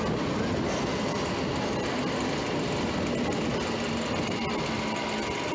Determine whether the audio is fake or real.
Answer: real